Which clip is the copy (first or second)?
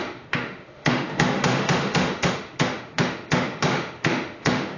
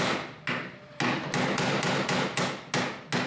first